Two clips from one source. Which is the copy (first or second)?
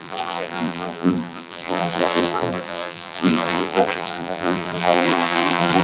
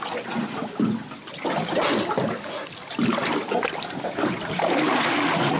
first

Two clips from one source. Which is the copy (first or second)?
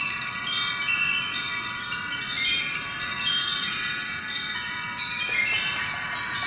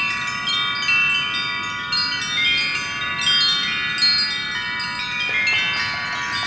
first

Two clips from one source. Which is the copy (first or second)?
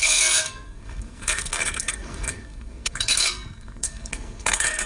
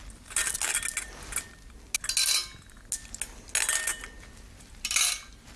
first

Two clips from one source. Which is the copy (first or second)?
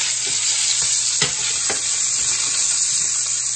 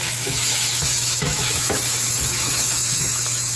second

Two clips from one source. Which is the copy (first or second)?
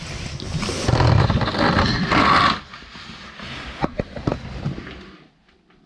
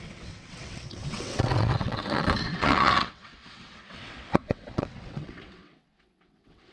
second